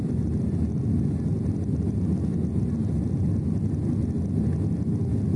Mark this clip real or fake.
real